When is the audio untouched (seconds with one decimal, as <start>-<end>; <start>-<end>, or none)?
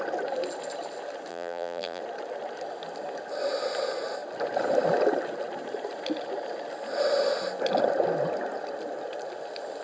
0.0-1.3; 2.0-9.8